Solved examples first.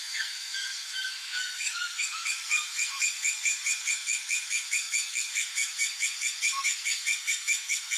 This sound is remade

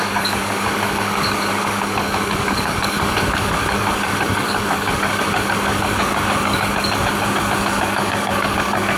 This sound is remade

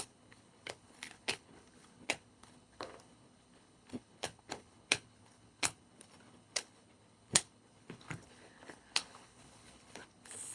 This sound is remade